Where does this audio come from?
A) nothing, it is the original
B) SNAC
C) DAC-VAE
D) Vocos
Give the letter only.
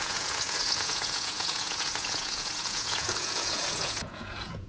D